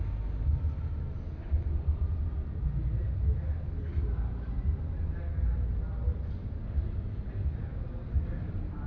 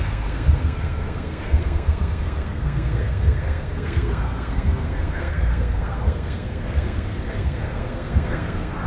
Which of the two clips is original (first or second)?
first